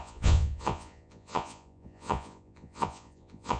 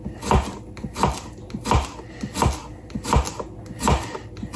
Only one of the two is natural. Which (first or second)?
second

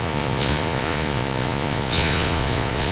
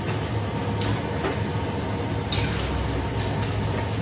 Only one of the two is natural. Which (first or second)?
second